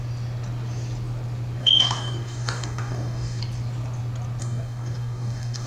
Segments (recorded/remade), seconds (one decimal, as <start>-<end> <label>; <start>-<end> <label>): 0.0-1.6 recorded; 1.6-3.4 remade; 3.4-4.4 recorded; 4.4-5.7 remade